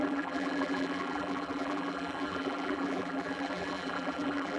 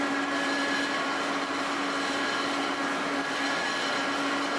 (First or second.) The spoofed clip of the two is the first